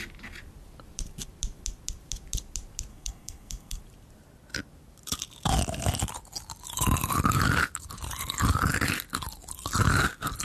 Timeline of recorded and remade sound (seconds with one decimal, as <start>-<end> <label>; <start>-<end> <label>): 0.0-2.9 recorded; 2.9-3.8 remade; 3.8-10.4 recorded